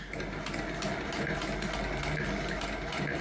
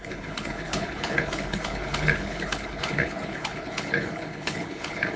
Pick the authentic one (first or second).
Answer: first